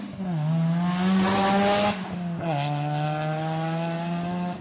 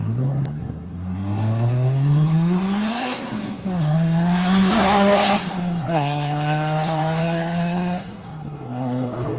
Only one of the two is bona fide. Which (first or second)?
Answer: first